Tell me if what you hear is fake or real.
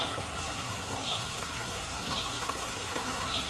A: fake